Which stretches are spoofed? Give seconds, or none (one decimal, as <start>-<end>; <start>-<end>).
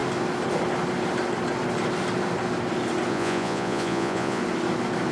3.1-4.4